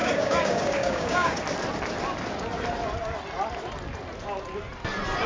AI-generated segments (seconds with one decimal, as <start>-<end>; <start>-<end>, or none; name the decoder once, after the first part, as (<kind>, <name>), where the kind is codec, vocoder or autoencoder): 0.0-1.4 (codec, DAC)